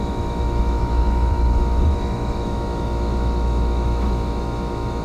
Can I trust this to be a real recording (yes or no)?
no